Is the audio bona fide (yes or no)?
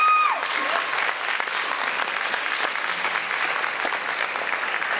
yes